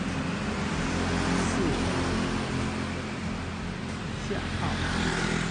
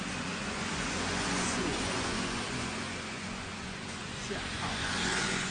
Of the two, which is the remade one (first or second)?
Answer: second